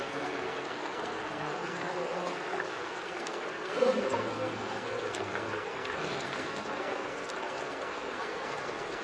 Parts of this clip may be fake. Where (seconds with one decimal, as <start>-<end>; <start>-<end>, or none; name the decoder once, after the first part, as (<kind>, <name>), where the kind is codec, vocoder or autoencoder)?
0.0-9.0 (codec, SNAC)